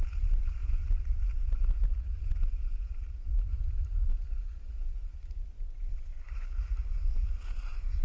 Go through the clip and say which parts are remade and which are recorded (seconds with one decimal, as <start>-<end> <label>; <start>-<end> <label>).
0.0-5.9 recorded; 5.9-6.5 remade; 6.5-8.0 recorded